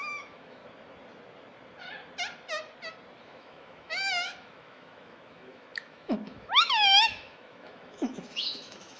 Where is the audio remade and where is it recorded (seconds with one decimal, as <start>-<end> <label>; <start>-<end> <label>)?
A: 0.0-0.6 remade; 0.6-3.2 recorded; 3.2-9.0 remade